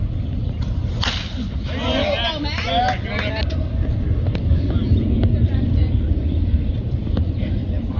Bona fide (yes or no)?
yes